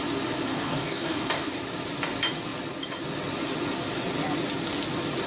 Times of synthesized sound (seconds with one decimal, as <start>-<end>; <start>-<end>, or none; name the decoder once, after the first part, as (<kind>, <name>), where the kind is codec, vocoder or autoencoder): 0.5-1.6 (codec, DAC)